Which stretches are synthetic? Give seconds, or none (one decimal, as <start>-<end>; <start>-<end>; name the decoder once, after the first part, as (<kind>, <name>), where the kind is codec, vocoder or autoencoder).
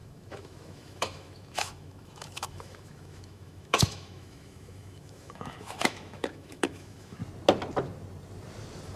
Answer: 0.0-7.2 (autoencoder, DAC-VAE)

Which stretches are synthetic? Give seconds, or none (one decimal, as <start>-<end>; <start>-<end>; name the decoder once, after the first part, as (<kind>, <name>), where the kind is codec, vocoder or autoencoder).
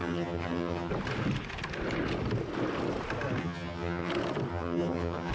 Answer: 0.0-0.9 (vocoder, HiFi-GAN); 3.4-4.1; 4.5-5.3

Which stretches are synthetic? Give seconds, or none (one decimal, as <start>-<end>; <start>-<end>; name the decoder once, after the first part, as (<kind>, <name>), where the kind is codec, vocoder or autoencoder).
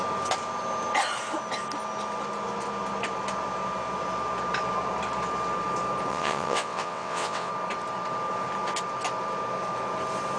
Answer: 6.1-7.5 (vocoder, WaveNeXt)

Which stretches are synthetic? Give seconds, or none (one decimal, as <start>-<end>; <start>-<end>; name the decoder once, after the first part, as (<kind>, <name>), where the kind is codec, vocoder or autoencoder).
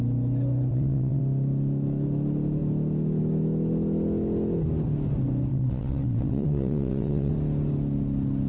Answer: 0.7-1.2 (vocoder, WaveNeXt); 5.5-7.3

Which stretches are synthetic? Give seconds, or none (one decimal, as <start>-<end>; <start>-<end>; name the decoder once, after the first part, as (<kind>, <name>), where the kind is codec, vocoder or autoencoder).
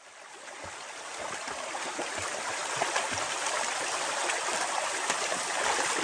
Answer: none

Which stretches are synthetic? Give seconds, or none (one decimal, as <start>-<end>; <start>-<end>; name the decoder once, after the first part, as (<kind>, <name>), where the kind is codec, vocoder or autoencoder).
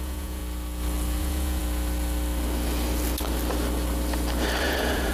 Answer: 0.0-0.4 (vocoder, Vocos); 1.2-1.6; 4.6-5.1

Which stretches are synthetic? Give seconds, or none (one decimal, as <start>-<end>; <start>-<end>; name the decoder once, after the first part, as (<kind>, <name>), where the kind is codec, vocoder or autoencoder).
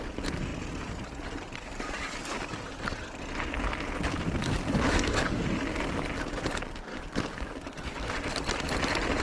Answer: 4.4-5.4 (codec, DAC); 6.9-8.1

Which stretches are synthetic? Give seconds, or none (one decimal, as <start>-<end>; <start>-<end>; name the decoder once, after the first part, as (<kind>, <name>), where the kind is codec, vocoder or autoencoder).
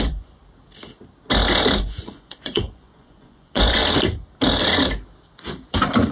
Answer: 0.0-0.4 (vocoder, Vocos); 1.8-3.8